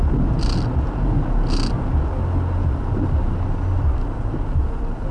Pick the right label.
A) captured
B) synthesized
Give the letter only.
A